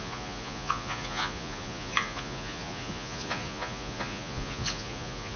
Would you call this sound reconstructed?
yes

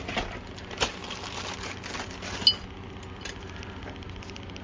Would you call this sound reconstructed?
no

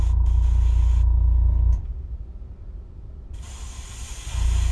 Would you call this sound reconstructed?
no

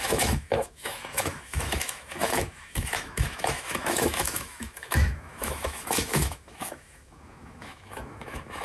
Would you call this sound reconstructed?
yes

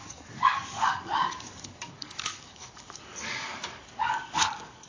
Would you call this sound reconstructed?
yes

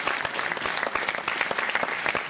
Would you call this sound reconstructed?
no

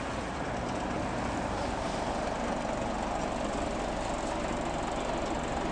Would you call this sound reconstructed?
no